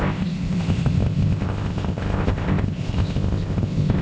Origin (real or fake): fake